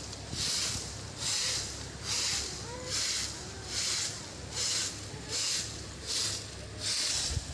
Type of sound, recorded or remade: recorded